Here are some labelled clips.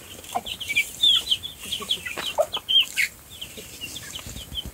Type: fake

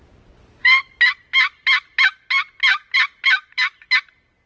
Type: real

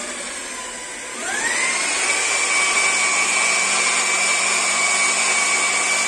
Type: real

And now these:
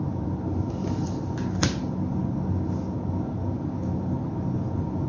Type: real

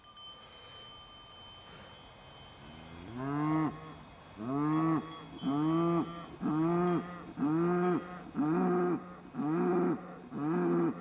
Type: real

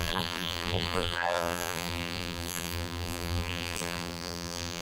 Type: fake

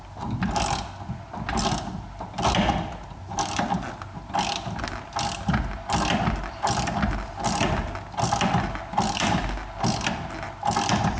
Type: real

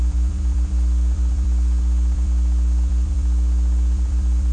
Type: fake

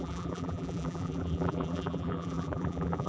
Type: fake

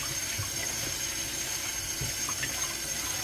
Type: real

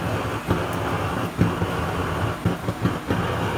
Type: real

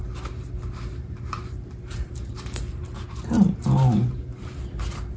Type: fake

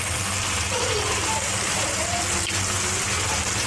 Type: fake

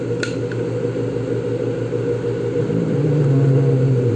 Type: real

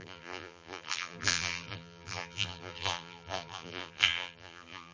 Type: fake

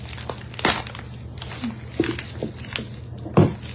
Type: real